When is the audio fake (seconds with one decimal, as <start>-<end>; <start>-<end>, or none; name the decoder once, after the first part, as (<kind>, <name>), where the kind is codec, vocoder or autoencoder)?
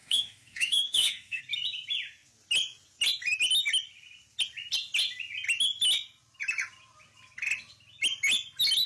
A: 0.0-1.4 (autoencoder, DAC-VAE)